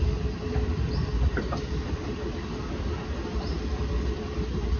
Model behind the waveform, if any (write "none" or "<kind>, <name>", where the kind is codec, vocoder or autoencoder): none